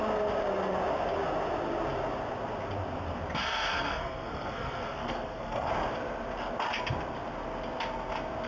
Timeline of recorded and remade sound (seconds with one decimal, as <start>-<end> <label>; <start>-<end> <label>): 0.0-3.4 recorded; 3.4-5.7 remade; 5.7-8.5 recorded